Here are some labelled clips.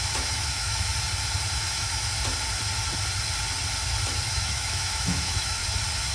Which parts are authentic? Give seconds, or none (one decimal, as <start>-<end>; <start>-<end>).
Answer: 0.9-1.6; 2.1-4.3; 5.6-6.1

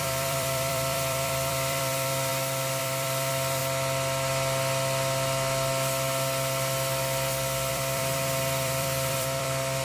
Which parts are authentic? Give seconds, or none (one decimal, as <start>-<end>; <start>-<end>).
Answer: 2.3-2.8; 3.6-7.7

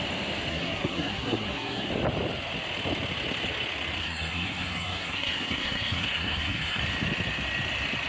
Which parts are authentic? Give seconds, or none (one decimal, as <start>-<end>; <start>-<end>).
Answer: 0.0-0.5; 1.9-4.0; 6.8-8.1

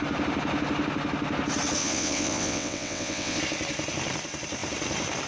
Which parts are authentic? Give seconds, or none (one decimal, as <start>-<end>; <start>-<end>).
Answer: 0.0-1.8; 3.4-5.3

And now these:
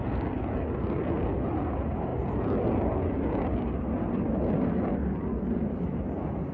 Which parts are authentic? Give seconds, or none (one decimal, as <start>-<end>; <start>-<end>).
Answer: 0.0-6.5

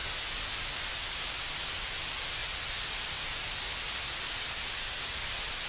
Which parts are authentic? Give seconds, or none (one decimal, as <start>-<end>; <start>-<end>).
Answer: 0.0-5.7